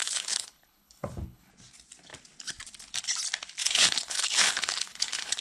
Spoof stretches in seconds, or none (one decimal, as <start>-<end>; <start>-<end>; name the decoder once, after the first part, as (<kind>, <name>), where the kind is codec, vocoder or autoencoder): 0.0-1.5 (codec, HILCodec); 3.6-5.4